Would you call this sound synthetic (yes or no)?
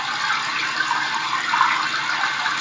no